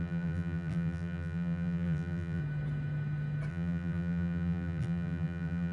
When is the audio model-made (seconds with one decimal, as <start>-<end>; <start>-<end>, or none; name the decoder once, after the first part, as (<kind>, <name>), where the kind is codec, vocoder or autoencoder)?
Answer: 0.0-2.4 (vocoder, BigVGAN v2); 3.5-5.7